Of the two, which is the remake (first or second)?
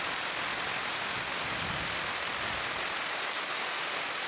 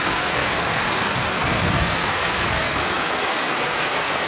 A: second